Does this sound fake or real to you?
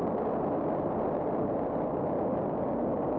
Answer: real